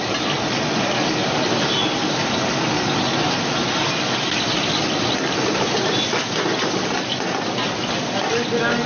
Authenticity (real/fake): real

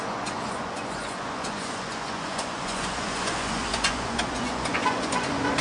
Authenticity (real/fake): fake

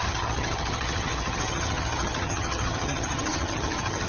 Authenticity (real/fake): fake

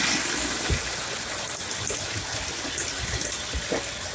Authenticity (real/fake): real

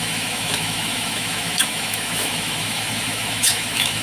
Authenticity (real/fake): fake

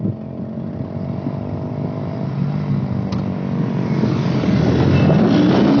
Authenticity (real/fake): real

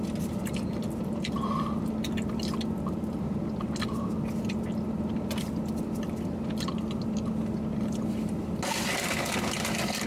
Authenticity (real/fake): real